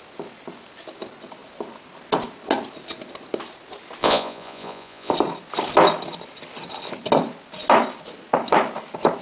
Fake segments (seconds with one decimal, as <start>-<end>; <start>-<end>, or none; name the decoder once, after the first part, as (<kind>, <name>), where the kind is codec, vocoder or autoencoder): 4.0-5.1 (vocoder, Vocos)